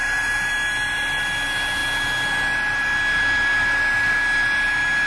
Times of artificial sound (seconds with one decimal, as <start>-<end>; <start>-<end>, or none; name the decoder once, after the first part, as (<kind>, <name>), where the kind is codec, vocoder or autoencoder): 0.0-0.5 (vocoder, BigVGAN v2)